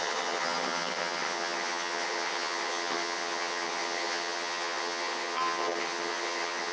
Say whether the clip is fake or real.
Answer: fake